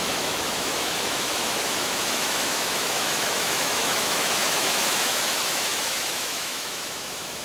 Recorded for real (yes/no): no